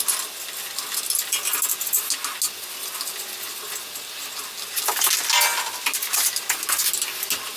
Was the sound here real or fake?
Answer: real